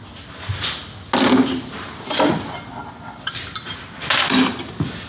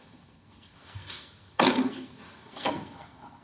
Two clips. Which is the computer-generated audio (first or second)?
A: second